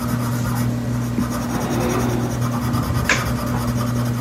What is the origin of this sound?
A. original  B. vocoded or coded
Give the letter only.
A